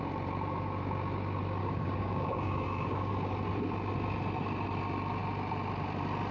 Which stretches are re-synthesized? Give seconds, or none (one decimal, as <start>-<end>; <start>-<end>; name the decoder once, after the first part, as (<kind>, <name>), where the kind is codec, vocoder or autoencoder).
1.6-3.1 (codec, DAC)